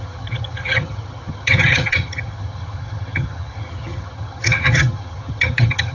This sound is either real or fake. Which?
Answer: fake